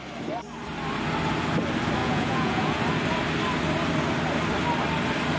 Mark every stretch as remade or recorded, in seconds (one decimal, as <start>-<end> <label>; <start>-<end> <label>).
0.0-2.0 recorded; 2.0-2.8 remade; 2.8-5.4 recorded